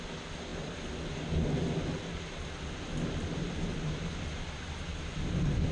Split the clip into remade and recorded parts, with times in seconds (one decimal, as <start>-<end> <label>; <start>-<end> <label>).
0.0-5.7 recorded